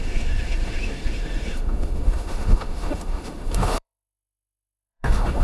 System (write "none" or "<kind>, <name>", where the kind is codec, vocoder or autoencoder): autoencoder, DAC-VAE